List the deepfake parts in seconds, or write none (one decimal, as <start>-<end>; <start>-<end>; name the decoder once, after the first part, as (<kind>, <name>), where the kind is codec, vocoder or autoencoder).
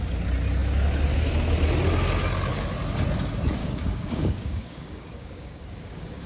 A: 3.6-6.3 (codec, DAC)